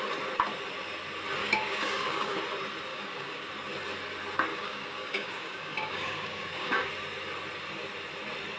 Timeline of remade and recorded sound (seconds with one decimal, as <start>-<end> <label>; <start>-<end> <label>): 0.0-1.4 recorded; 1.4-2.4 remade; 2.4-2.9 recorded; 2.9-3.5 remade; 3.5-4.5 recorded; 4.5-6.9 remade; 6.9-8.6 recorded